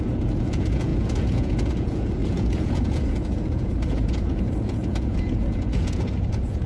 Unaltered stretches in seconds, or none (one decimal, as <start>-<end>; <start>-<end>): none